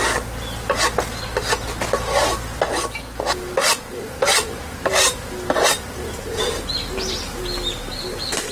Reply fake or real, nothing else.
real